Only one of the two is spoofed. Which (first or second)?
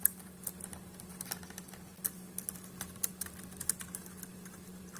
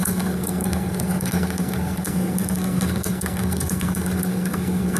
second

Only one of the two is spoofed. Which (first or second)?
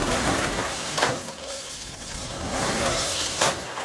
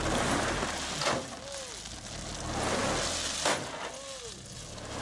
first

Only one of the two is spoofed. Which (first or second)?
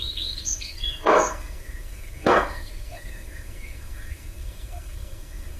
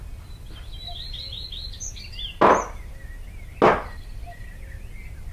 first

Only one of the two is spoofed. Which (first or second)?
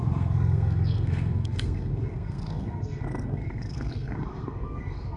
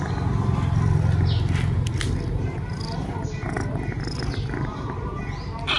first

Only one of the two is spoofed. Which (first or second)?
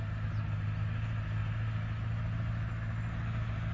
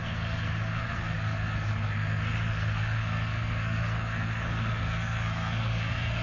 second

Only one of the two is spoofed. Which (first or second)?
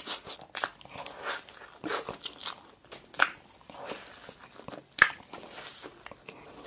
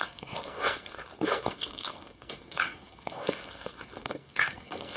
second